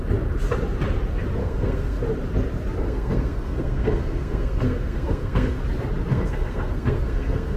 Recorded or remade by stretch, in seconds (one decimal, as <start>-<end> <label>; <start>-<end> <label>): 0.0-1.4 recorded; 1.4-2.0 remade; 2.0-2.8 recorded; 2.8-5.6 remade; 5.6-6.1 recorded; 6.1-7.6 remade